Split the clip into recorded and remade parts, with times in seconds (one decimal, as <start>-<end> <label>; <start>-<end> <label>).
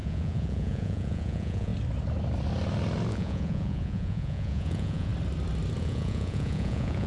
0.0-1.7 remade; 1.7-3.1 recorded; 3.1-5.1 remade; 5.1-5.8 recorded; 5.8-7.1 remade